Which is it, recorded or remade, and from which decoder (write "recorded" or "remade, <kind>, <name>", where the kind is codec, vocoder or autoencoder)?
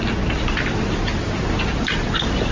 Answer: recorded